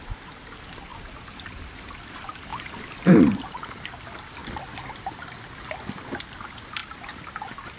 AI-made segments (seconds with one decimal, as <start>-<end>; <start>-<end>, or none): none